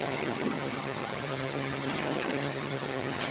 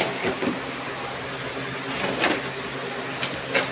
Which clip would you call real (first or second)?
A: second